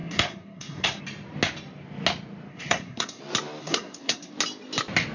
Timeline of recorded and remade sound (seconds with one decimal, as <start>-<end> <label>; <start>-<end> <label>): 0.0-1.0 remade; 1.0-2.5 recorded; 2.5-3.2 remade; 3.2-3.6 recorded; 3.6-4.3 remade; 4.3-5.1 recorded